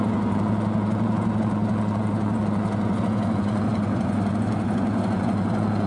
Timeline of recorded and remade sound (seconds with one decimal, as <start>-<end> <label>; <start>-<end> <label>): 0.0-5.9 remade